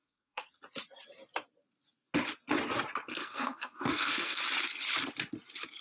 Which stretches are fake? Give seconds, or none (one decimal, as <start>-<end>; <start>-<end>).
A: 0.0-0.5; 3.1-4.4